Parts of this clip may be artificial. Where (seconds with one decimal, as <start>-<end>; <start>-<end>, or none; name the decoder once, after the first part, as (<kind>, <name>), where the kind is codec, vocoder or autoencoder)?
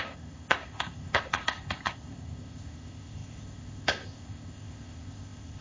0.0-5.6 (codec, ZipCodec)